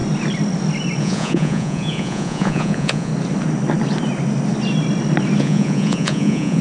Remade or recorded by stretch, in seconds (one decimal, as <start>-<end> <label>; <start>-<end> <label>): 0.0-1.0 recorded; 1.0-3.1 remade; 3.1-5.4 recorded; 5.4-6.6 remade